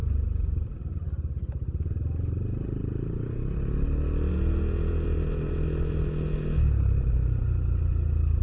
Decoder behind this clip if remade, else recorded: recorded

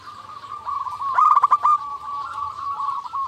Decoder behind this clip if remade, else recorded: remade, vocoder, BigVGAN v2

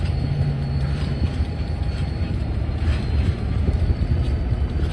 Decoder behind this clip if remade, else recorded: remade, vocoder, BigVGAN v2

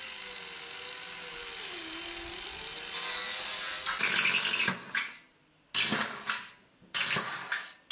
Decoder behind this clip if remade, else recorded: recorded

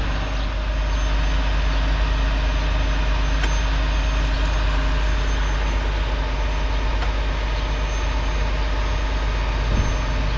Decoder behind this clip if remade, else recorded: recorded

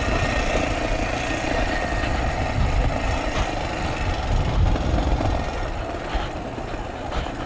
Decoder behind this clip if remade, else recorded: recorded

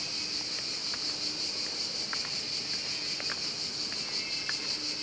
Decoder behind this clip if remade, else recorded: recorded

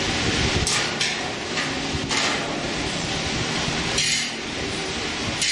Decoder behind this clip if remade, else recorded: remade, vocoder, BigVGAN v2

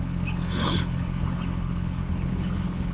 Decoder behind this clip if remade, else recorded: remade, codec, HILCodec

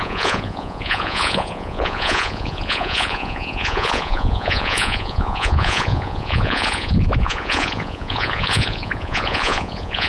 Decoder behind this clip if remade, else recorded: remade, vocoder, Vocos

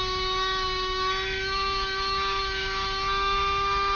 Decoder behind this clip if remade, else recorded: remade, autoencoder, DAC-VAE